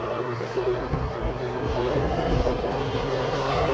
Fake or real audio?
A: fake